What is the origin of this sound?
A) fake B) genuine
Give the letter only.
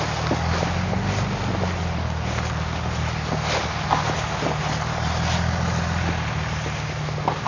B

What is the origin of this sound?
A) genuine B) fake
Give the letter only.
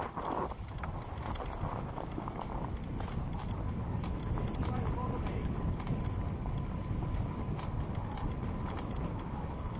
A